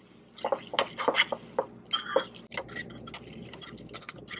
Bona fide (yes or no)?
yes